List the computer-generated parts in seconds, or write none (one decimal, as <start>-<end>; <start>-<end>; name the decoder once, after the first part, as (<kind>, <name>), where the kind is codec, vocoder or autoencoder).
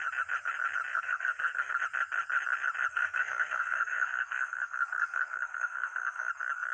0.9-1.8 (codec, SNAC); 2.9-6.3